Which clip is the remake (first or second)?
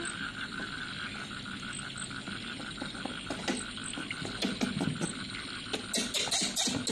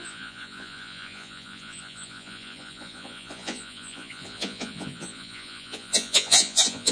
second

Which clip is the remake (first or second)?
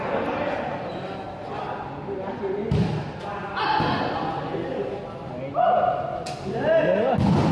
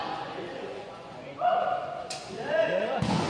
second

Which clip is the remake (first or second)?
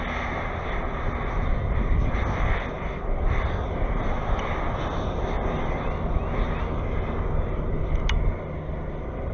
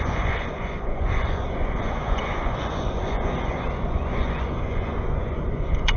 second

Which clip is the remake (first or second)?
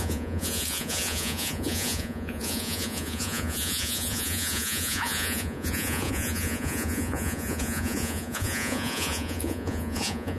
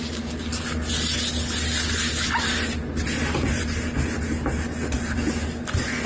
first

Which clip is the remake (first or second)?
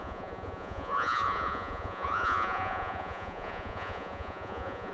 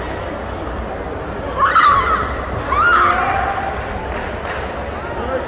first